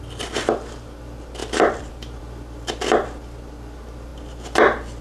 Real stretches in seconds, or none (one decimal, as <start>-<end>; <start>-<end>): 0.0-1.4; 2.2-5.0